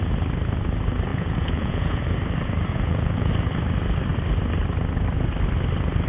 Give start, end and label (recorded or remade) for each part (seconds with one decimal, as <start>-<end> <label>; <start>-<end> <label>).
0.0-1.1 recorded; 1.1-2.0 remade; 2.0-2.7 recorded; 2.7-3.3 remade; 3.3-6.1 recorded